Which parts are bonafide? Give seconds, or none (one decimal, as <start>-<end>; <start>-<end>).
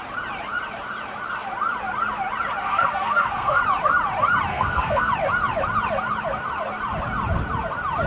0.0-2.6; 3.6-4.5; 5.1-8.1